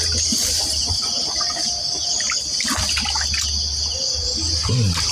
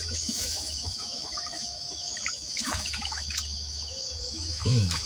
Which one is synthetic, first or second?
second